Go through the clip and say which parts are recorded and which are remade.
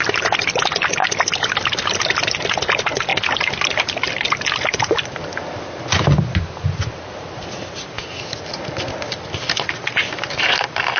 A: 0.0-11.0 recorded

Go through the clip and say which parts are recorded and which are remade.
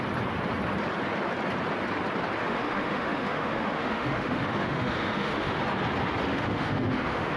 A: 0.0-2.4 recorded; 2.4-5.6 remade; 5.6-6.3 recorded; 6.3-7.4 remade